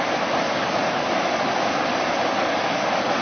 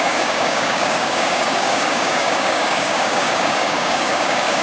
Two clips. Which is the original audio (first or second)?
first